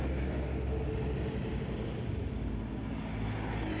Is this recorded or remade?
recorded